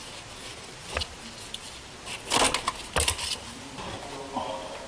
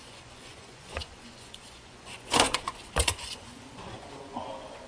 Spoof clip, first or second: second